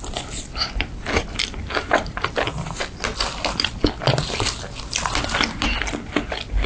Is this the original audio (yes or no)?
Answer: yes